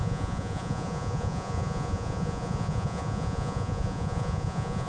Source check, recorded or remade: remade